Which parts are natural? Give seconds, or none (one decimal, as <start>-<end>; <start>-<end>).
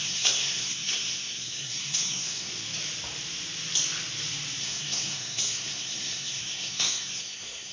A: 2.5-4.6